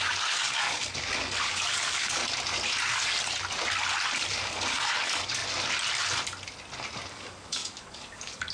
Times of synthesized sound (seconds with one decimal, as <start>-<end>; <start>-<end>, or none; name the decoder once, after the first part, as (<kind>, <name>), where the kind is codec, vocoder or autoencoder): 0.0-2.2 (codec, DAC); 4.3-5.4; 7.1-8.5